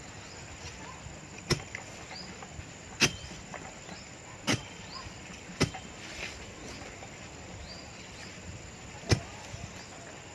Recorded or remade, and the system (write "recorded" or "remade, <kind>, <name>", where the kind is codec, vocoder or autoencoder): recorded